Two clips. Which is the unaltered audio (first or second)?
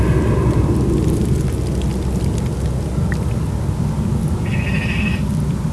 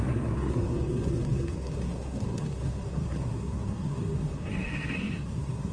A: first